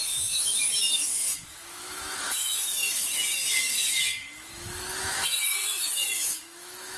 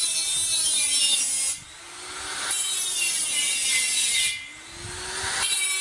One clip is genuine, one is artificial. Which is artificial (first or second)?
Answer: first